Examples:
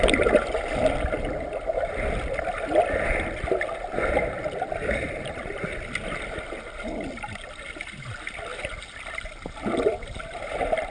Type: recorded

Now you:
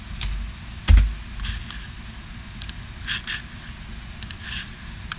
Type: recorded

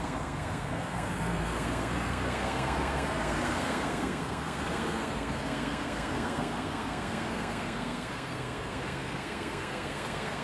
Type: remade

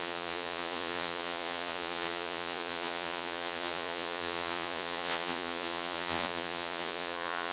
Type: remade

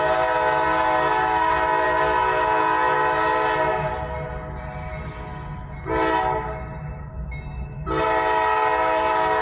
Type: recorded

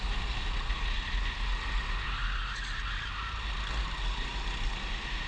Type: recorded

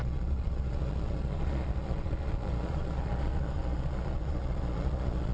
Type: remade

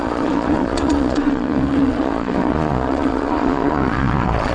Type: remade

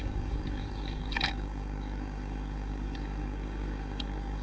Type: remade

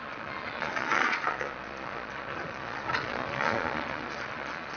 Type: remade